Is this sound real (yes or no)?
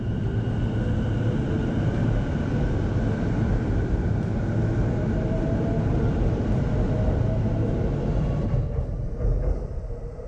yes